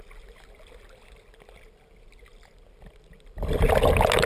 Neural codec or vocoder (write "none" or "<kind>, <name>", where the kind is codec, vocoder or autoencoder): none